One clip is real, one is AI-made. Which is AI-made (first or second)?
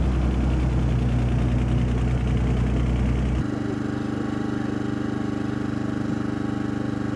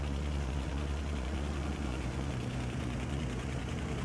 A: second